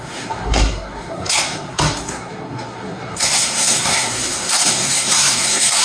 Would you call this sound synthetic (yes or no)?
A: yes